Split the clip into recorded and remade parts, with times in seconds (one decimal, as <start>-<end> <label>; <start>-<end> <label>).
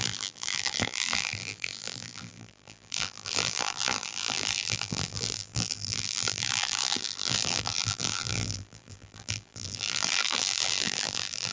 0.0-11.5 remade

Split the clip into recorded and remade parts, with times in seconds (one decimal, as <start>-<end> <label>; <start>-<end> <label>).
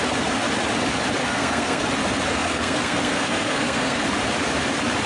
0.0-1.2 recorded; 1.2-1.8 remade; 1.8-2.3 recorded; 2.3-4.0 remade; 4.0-5.1 recorded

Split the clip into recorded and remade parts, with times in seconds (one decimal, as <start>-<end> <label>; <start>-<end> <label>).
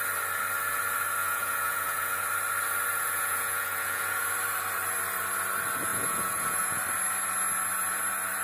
0.0-1.2 recorded; 1.2-2.2 remade; 2.2-2.9 recorded; 2.9-4.3 remade; 4.3-5.9 recorded; 5.9-6.8 remade; 6.8-8.4 recorded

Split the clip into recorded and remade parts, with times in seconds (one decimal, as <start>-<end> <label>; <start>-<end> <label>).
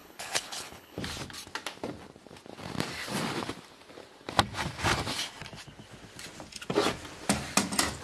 0.0-1.0 remade; 1.0-8.0 recorded